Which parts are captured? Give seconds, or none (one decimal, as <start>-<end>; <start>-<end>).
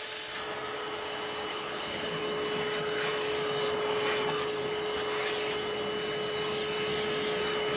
0.0-1.5; 2.2-7.8